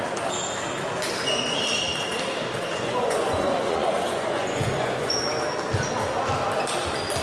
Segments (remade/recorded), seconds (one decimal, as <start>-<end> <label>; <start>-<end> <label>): 0.0-2.7 recorded; 2.7-5.2 remade; 5.2-7.2 recorded